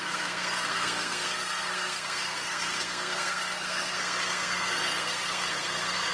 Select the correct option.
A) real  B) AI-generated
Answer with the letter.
B